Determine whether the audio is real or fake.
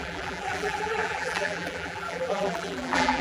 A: fake